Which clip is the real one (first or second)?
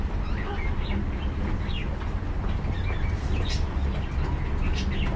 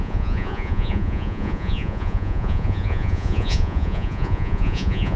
first